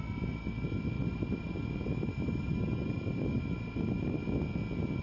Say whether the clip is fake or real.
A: real